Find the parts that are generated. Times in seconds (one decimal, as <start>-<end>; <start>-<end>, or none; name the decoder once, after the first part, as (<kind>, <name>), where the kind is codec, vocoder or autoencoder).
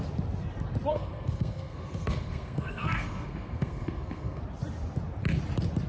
0.9-4.4 (codec, SNAC)